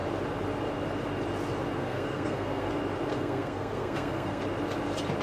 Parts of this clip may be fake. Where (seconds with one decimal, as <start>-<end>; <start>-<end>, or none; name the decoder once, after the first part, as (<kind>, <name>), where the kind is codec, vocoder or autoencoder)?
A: 1.8-2.7 (codec, SNAC); 3.1-4.4